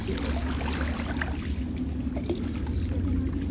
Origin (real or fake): real